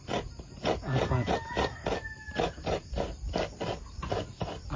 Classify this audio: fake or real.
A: real